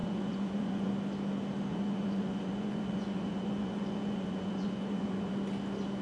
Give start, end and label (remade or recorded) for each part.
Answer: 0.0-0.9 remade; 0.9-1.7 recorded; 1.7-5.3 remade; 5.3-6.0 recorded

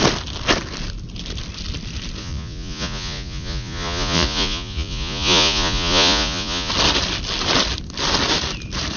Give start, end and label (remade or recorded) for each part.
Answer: 0.0-2.2 recorded; 2.2-6.7 remade; 6.7-9.0 recorded

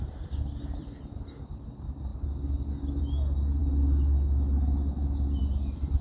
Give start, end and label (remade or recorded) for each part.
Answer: 0.0-6.0 recorded

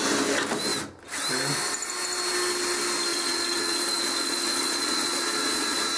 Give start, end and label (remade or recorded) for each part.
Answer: 0.0-3.1 recorded; 3.1-6.0 remade

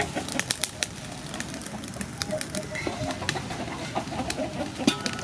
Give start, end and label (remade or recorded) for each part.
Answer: 0.0-5.2 recorded

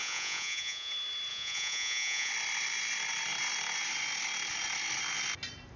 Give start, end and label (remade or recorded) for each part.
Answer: 0.0-0.9 remade; 0.9-1.3 recorded; 1.3-2.3 remade; 2.3-5.8 recorded

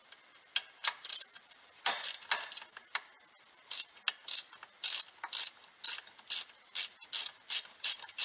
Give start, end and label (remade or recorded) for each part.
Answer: 0.0-8.2 recorded